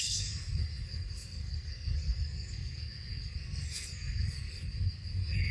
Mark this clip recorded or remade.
remade